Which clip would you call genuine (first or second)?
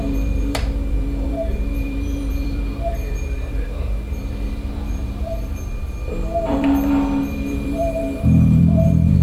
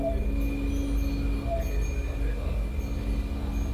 second